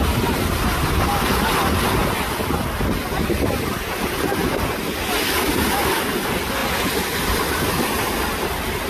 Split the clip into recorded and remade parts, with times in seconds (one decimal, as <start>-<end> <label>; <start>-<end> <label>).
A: 0.0-6.6 recorded; 6.6-8.2 remade; 8.2-8.9 recorded